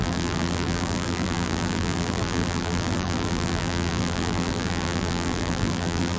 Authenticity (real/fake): fake